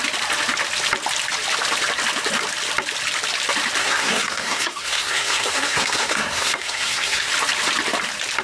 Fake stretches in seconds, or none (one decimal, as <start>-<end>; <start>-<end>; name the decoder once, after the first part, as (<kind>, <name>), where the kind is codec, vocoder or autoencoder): 3.8-7.3 (codec, SNAC)